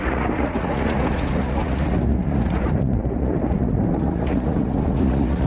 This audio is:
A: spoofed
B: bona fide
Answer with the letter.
A